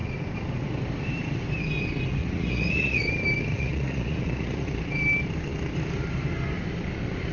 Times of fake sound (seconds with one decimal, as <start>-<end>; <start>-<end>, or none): 2.2-3.0; 3.5-4.7